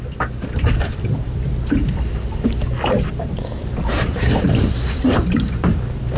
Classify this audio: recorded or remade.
remade